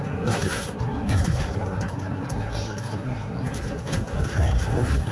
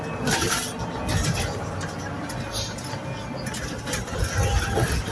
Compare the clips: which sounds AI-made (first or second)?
first